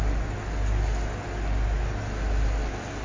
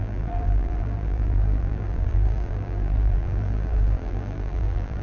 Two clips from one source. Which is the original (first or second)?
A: first